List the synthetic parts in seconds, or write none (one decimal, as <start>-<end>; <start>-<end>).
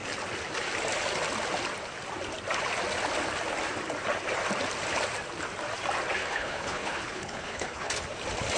6.2-7.9